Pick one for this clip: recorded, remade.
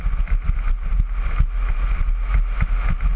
recorded